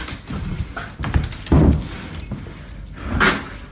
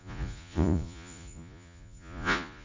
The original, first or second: first